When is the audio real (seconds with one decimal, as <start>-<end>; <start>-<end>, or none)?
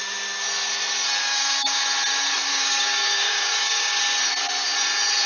0.0-1.2; 1.8-2.5; 4.0-5.3